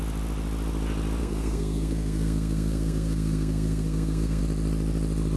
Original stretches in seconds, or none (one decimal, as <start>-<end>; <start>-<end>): 0.0-1.2; 4.4-5.4